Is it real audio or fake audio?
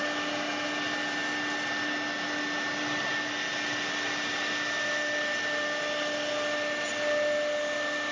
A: real